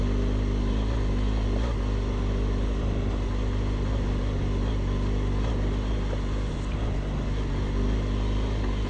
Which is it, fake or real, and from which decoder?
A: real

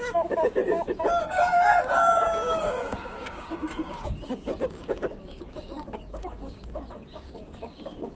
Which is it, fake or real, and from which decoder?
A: fake, codec, DAC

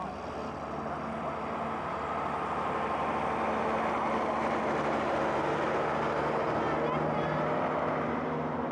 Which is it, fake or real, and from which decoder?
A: real